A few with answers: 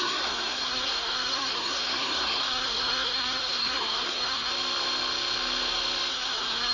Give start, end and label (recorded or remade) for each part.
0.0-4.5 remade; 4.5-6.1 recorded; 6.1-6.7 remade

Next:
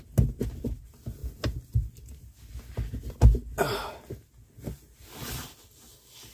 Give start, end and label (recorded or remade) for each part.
0.0-6.3 recorded

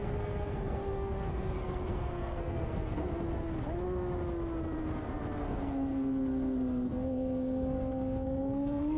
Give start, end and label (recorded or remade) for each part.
0.0-3.4 remade; 3.4-5.4 recorded; 5.4-9.0 remade

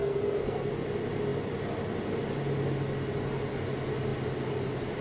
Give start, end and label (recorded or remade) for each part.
0.0-0.7 remade; 0.7-5.0 recorded

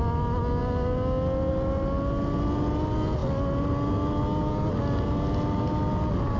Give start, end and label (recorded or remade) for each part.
0.0-6.4 recorded

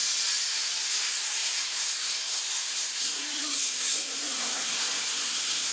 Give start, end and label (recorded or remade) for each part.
0.0-0.8 recorded; 0.8-5.7 remade

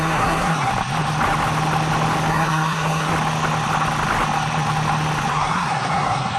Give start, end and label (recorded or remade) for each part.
0.0-0.7 remade; 0.7-2.3 recorded; 2.3-3.1 remade; 3.1-5.3 recorded; 5.3-6.4 remade

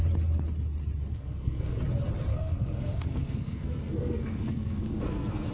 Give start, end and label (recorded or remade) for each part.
0.0-1.1 recorded; 1.1-1.8 remade; 1.8-2.3 recorded; 2.3-5.5 remade